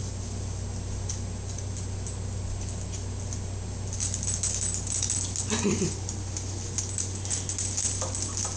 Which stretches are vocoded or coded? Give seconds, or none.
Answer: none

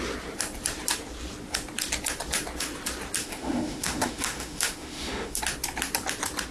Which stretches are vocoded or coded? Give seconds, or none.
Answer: 3.2-5.4 (autoencoder, DAC-VAE)

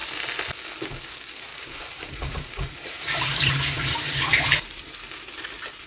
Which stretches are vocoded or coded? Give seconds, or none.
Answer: 1.5-4.9 (vocoder, BigVGAN v2)

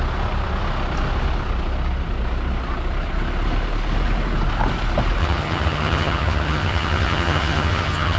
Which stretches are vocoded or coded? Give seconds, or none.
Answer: 5.2-8.2 (vocoder, HiFi-GAN)

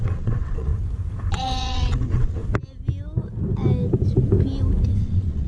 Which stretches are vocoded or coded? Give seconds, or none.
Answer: 0.0-0.7 (vocoder, WaveNeXt); 1.3-2.4; 5.0-5.5